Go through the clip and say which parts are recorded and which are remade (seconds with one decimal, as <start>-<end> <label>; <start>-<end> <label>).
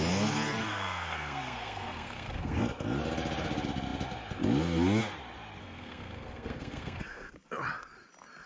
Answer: 0.0-0.6 recorded; 0.6-2.6 remade; 2.6-5.6 recorded; 5.6-7.3 remade; 7.3-8.5 recorded